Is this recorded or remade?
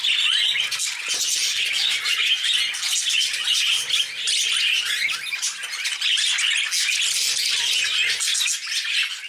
recorded